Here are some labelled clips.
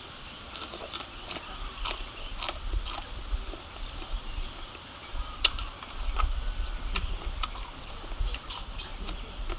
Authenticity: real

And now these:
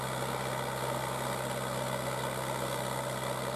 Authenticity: real